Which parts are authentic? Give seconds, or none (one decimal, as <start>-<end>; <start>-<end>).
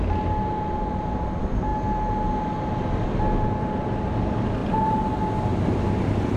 0.0-6.4